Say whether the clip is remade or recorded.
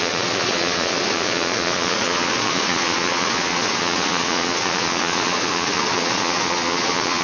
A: remade